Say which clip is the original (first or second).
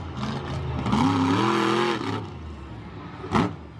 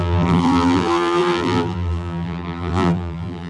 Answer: first